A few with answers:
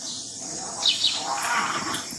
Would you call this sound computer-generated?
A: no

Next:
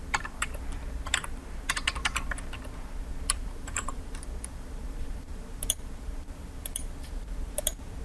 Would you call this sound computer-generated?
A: yes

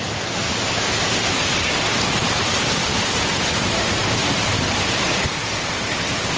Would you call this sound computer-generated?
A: yes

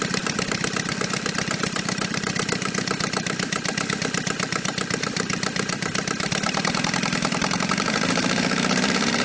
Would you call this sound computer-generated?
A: yes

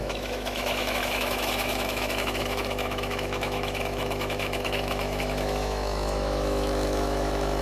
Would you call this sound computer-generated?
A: yes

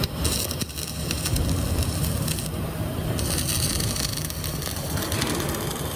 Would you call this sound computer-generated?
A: no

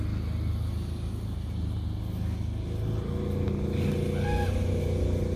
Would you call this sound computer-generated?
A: no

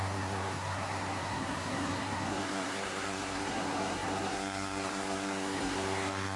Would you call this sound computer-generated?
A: yes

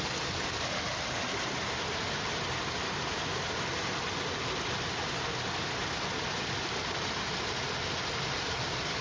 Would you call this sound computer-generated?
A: no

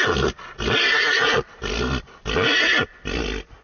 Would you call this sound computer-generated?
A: no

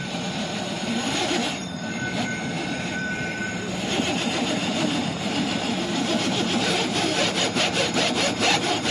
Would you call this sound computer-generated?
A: yes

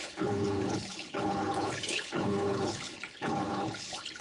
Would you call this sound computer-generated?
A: yes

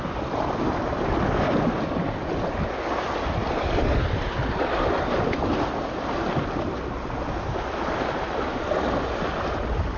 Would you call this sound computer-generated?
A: no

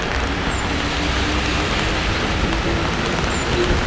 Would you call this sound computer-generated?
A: no